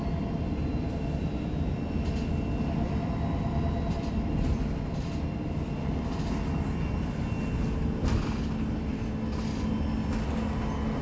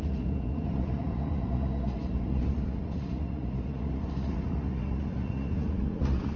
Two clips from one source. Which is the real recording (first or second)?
first